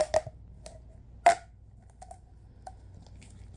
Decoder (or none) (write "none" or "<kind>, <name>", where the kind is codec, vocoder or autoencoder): none